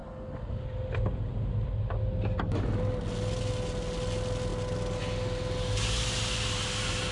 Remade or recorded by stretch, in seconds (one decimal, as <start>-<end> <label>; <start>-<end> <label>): 0.0-7.1 recorded